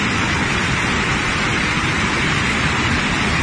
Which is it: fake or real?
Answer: fake